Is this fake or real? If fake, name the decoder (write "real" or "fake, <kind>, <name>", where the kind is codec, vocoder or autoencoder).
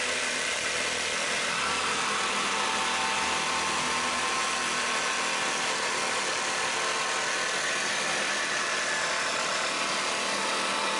real